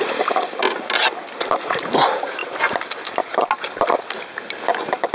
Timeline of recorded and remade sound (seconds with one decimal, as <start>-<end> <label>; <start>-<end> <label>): 0.0-5.1 recorded